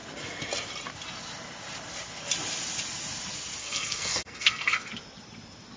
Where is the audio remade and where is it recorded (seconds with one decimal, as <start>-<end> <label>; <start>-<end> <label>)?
0.0-3.6 recorded; 3.6-4.9 remade; 4.9-5.8 recorded